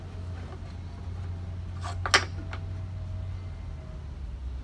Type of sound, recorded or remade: recorded